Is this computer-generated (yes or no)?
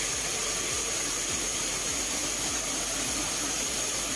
no